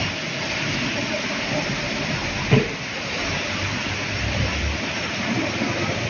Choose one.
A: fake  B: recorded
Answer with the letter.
A